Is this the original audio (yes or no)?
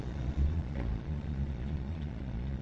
no